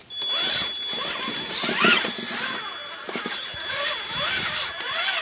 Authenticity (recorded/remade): recorded